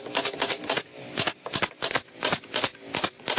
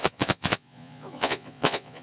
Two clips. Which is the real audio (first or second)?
first